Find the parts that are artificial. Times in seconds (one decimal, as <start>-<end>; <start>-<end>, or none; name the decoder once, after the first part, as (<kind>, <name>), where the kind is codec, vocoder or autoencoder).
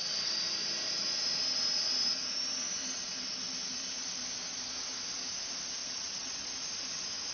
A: 5.8-6.5 (vocoder, WaveNeXt)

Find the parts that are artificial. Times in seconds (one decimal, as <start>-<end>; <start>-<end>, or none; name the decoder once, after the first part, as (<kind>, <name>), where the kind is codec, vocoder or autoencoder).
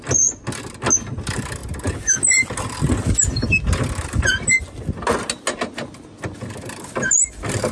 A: none